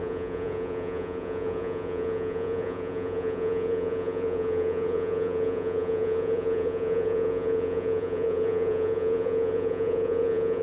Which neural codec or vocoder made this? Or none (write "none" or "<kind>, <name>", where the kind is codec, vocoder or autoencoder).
vocoder, Vocos